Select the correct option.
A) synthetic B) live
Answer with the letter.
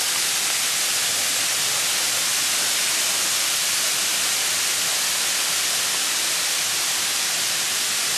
B